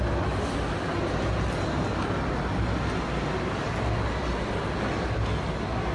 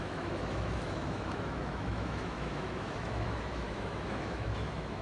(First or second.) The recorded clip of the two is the first